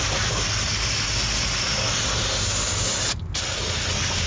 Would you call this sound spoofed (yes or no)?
no